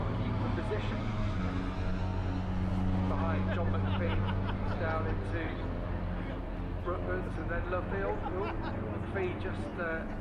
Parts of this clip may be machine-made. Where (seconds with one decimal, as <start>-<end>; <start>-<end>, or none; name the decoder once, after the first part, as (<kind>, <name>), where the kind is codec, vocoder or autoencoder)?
0.0-1.4 (vocoder, BigVGAN v2)